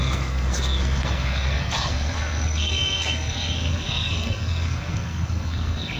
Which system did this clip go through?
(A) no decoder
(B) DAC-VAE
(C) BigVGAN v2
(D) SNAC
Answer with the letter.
D